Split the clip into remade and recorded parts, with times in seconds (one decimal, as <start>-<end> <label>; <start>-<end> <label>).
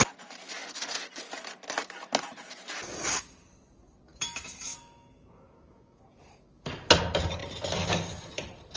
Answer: 0.0-4.1 recorded; 4.1-6.0 remade; 6.0-8.8 recorded